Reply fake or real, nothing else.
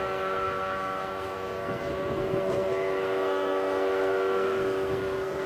fake